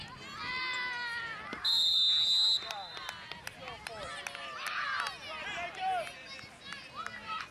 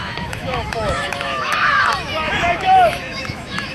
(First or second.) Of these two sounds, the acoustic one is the first